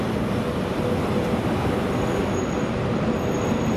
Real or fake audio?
real